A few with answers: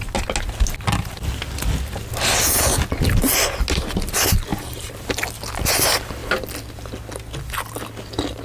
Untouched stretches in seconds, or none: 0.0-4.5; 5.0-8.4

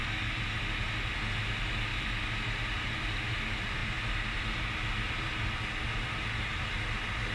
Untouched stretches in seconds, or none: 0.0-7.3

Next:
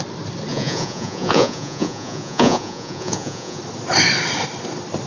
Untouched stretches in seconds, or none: 0.0-0.5; 3.6-5.1

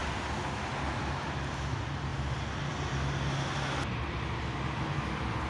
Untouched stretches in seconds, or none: 0.0-5.5

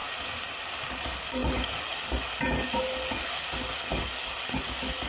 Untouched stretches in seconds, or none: 0.6-5.1

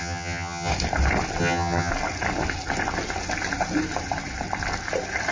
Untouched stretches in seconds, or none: 0.7-1.4; 1.9-5.3

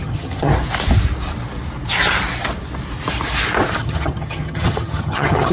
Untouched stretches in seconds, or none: 0.5-3.8

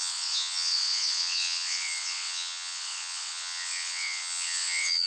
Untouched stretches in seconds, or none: none